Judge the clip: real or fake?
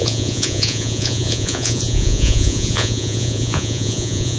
fake